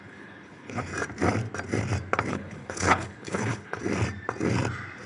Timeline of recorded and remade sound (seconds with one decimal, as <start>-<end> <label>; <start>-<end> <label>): 0.0-0.9 remade; 0.9-2.3 recorded; 2.3-3.8 remade; 3.8-5.1 recorded

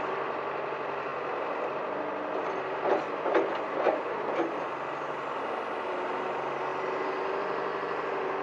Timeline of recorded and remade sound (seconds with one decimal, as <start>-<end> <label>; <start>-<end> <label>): 0.0-8.4 recorded

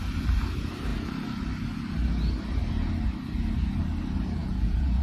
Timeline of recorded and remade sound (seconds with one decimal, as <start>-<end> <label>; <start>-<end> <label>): 0.0-4.4 recorded; 4.4-5.0 remade